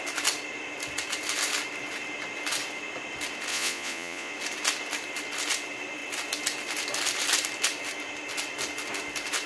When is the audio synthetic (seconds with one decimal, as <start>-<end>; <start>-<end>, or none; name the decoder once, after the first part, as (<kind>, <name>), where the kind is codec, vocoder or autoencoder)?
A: 3.5-4.3 (vocoder, Vocos)